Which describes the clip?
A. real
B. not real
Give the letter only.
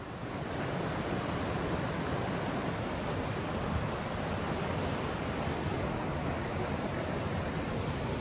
A